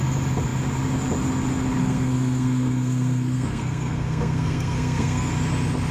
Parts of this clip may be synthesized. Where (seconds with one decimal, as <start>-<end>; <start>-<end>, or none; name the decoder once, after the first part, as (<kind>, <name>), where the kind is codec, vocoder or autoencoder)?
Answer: 1.8-5.3 (codec, SNAC)

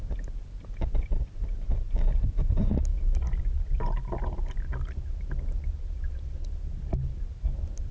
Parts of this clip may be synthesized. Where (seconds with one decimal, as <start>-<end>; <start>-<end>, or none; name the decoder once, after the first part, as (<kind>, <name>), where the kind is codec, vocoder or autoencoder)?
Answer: none

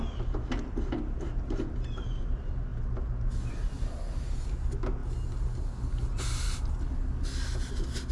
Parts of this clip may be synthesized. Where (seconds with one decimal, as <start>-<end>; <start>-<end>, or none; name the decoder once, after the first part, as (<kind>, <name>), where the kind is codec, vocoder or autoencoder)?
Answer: none

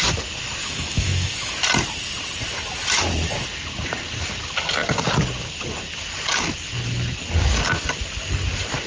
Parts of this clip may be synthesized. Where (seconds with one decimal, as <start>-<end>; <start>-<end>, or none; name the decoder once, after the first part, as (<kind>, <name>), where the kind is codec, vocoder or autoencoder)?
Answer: 0.6-1.5 (autoencoder, DAC-VAE)

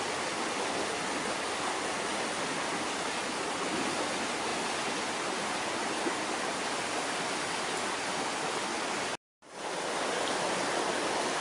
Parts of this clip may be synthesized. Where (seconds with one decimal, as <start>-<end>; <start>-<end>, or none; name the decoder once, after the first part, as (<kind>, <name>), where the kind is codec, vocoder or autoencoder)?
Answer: none